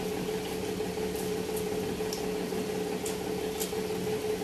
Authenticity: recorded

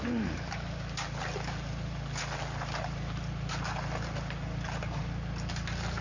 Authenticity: recorded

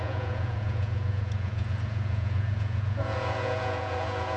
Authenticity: remade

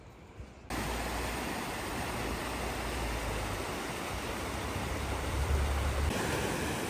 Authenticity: recorded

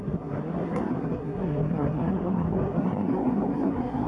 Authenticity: remade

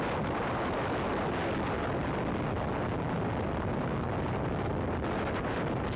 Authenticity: recorded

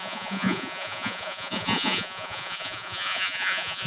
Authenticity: remade